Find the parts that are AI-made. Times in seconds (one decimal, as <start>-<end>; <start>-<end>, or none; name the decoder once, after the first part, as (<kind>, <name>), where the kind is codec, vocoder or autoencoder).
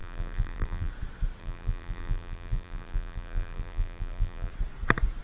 0.0-0.9 (vocoder, BigVGAN v2); 1.4-4.5